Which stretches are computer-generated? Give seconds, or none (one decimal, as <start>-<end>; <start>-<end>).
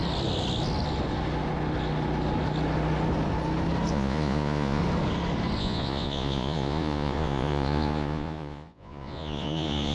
3.9-4.8; 5.6-9.9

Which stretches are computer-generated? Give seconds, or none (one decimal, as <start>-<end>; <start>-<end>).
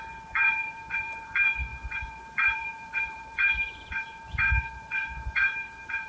0.0-6.1